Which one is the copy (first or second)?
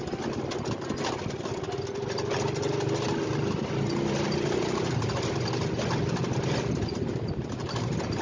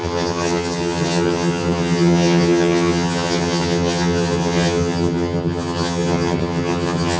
second